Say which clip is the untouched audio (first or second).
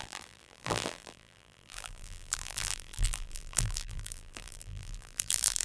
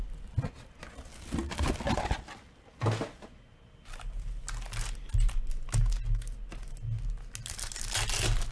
second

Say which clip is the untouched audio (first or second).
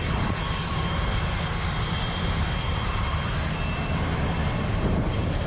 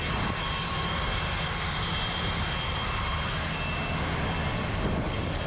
second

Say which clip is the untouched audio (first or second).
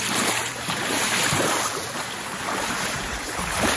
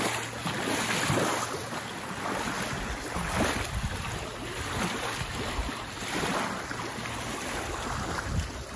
second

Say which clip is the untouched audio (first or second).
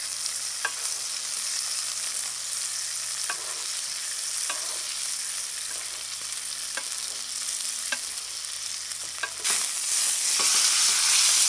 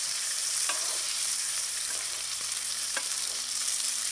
first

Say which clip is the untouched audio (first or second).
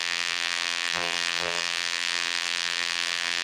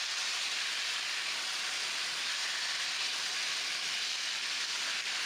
second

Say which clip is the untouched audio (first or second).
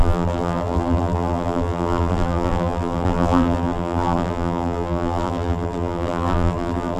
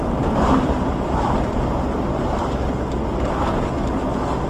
second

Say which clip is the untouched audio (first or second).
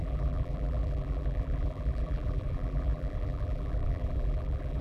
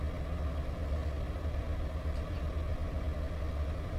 second